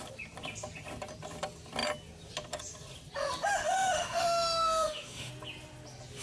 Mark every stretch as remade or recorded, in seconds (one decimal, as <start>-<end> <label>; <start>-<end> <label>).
0.0-3.5 recorded; 3.5-5.3 remade; 5.3-6.2 recorded